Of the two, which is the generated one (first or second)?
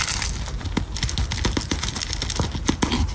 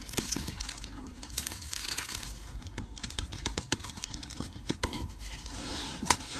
second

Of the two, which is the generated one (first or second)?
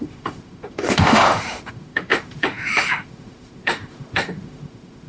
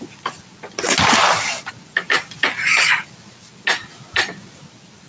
first